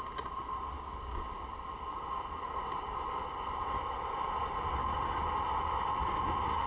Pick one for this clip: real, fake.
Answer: real